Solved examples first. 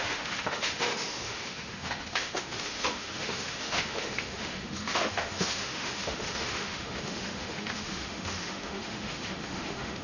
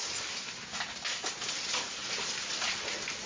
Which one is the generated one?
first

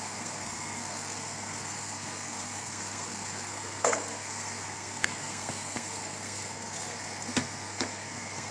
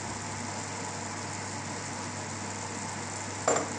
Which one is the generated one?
first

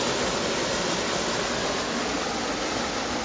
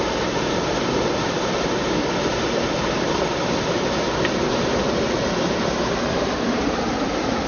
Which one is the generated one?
second